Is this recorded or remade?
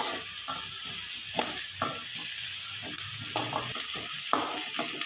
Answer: recorded